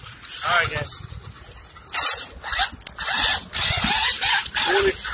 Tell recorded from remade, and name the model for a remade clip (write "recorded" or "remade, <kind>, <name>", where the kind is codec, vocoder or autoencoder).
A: recorded